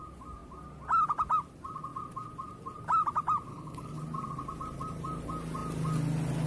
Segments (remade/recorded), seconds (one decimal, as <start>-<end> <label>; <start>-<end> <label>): 0.0-3.5 recorded; 3.5-4.0 remade; 4.0-6.5 recorded